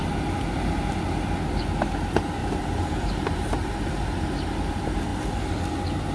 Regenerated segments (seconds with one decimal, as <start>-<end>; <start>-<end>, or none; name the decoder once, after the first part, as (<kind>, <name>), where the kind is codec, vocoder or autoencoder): 2.4-3.8 (vocoder, BigVGAN v2)